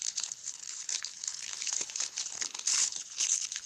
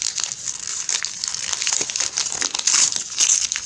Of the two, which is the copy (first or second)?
first